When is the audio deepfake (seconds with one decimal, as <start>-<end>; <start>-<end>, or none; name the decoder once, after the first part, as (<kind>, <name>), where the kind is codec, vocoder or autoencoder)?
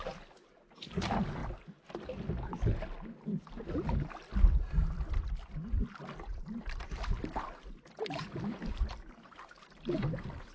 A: none